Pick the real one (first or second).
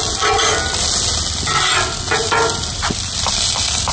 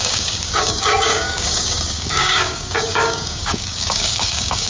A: first